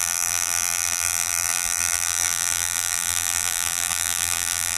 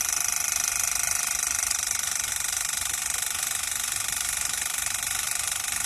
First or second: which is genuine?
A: second